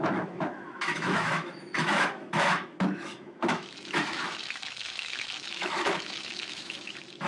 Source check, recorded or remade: remade